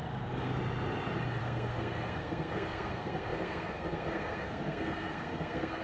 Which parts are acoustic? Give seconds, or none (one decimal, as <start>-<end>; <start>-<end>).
0.5-1.4